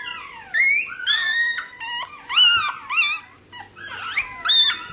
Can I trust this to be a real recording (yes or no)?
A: yes